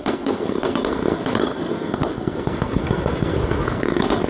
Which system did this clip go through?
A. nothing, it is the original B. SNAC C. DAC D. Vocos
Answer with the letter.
B